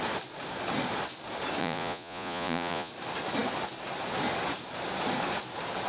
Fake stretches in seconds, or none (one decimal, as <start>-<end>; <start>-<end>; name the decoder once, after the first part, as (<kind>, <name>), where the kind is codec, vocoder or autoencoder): 1.6-2.9 (vocoder, Vocos)